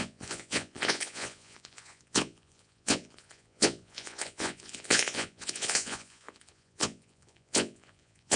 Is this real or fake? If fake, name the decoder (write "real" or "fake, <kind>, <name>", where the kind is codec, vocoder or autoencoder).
fake, vocoder, Vocos